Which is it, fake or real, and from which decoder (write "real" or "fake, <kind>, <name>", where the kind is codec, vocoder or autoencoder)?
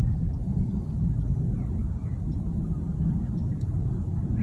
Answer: real